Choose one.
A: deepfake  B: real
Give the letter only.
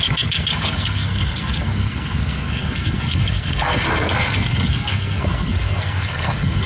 A